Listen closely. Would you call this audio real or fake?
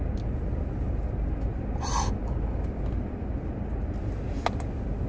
real